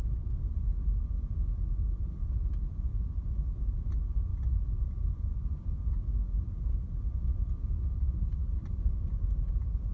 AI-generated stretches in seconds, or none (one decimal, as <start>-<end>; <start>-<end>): none